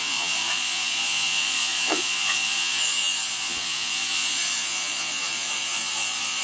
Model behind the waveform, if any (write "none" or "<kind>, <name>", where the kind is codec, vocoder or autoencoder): vocoder, Vocos